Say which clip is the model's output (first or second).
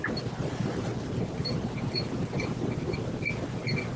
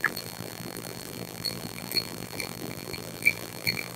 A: second